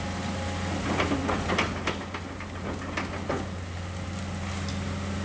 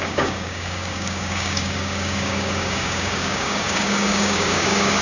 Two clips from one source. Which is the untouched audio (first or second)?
first